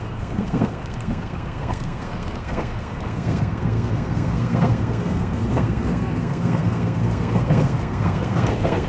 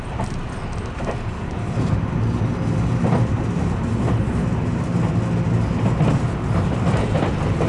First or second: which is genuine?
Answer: second